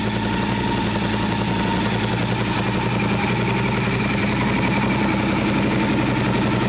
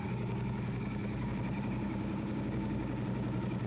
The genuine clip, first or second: first